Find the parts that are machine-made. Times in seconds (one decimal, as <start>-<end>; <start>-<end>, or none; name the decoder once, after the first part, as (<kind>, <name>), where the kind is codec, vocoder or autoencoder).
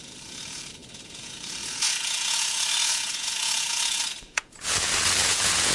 0.0-5.7 (vocoder, Vocos)